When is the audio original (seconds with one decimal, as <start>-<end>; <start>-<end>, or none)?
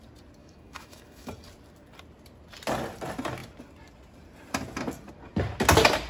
0.0-0.4; 1.3-6.1